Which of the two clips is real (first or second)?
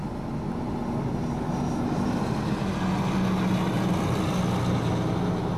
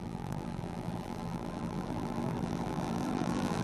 first